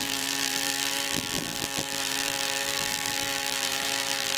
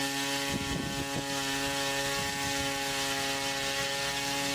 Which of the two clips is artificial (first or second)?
first